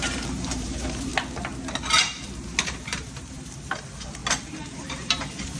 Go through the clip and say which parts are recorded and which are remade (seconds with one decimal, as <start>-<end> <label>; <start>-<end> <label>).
0.0-1.1 remade; 1.1-2.6 recorded; 2.6-4.2 remade; 4.2-4.7 recorded; 4.7-5.6 remade